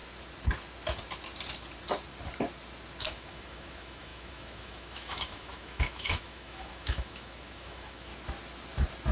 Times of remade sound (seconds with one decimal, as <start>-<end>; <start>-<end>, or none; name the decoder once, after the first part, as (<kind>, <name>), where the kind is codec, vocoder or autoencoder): 3.0-8.1 (autoencoder, DAC-VAE)